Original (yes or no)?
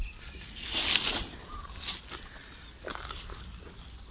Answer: yes